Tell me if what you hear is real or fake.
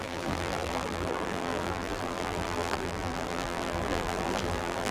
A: fake